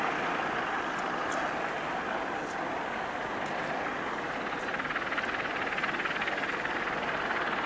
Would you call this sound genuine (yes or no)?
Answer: yes